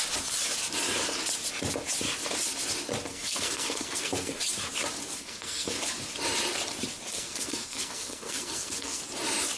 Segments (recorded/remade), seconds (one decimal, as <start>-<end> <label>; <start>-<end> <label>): 0.0-3.1 recorded; 3.1-4.4 remade; 4.4-5.0 recorded; 5.0-5.8 remade; 5.8-7.1 recorded; 7.1-9.0 remade; 9.0-9.6 recorded

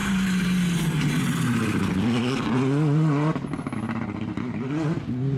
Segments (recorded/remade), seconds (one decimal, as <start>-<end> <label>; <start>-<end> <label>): 0.0-5.4 recorded

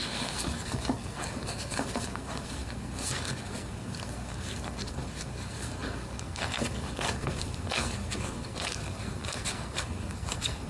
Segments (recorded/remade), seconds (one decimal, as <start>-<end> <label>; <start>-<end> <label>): 0.0-10.7 remade

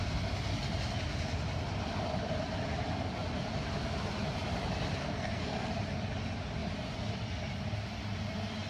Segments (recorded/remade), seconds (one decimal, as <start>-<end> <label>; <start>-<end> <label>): 0.0-5.0 recorded; 5.0-5.7 remade; 5.7-8.7 recorded

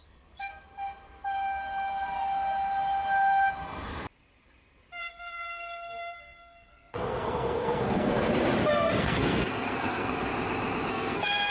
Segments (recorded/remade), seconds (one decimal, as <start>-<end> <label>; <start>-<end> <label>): 0.0-0.5 remade; 0.5-5.0 recorded; 5.0-8.3 remade; 8.3-9.0 recorded; 9.0-10.3 remade; 10.3-10.9 recorded; 10.9-11.5 remade

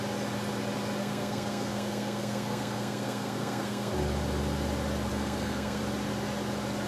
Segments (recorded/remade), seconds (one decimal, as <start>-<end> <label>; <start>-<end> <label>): 0.0-1.0 recorded; 1.0-3.9 remade; 3.9-5.1 recorded; 5.1-5.8 remade; 5.8-6.9 recorded